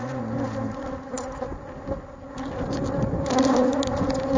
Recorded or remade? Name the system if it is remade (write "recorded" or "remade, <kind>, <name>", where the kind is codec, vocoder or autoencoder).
recorded